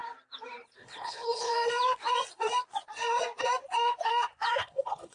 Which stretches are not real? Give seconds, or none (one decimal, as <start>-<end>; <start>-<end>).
0.8-1.5; 4.6-5.1